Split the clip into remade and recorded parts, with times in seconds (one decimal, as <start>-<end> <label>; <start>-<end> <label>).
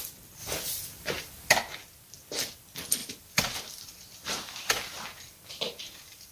0.0-0.4 recorded; 0.4-1.5 remade; 1.5-3.0 recorded; 3.0-6.3 remade